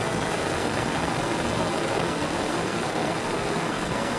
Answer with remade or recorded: remade